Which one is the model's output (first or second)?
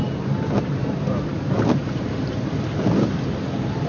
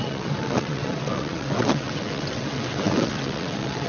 second